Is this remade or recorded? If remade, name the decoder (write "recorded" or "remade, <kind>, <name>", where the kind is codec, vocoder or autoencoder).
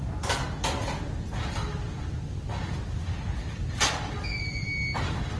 recorded